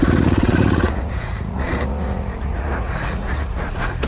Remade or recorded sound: remade